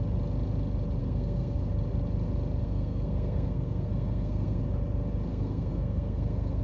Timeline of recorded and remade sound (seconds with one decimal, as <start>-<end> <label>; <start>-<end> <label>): 0.0-1.0 recorded; 1.0-1.6 remade; 1.6-2.6 recorded; 2.6-4.6 remade; 4.6-5.3 recorded; 5.3-6.6 remade